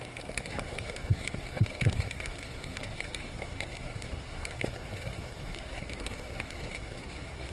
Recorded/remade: remade